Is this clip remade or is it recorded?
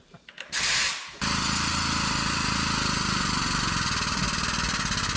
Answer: recorded